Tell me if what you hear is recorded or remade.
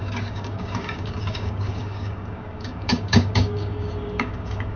remade